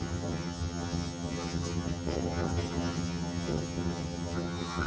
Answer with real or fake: fake